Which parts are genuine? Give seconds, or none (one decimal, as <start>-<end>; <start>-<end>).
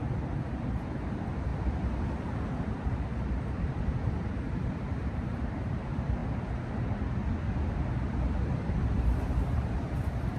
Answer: 1.5-3.5; 6.2-9.3